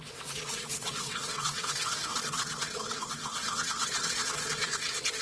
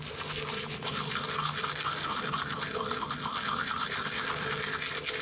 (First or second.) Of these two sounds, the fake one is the first